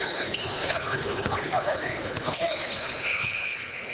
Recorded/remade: remade